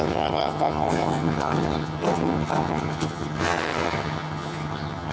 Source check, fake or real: fake